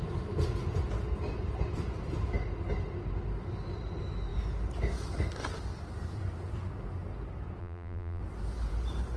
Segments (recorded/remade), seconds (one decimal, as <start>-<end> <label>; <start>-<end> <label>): 0.0-7.6 recorded; 7.6-8.2 remade; 8.2-9.2 recorded